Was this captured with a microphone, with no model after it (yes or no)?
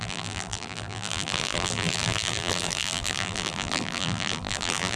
no